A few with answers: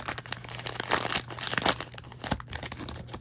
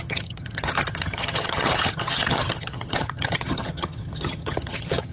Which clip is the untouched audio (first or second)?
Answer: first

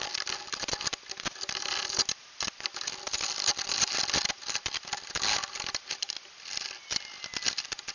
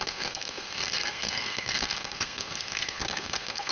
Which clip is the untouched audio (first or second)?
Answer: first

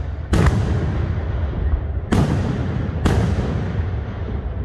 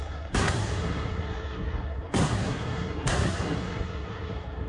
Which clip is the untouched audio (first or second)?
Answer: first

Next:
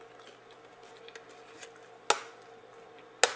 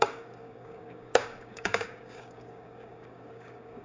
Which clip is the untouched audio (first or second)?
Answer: first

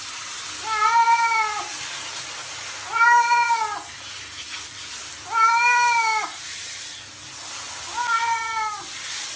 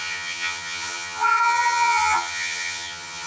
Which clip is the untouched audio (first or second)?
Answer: first